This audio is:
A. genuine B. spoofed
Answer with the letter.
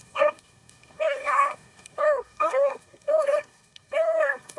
B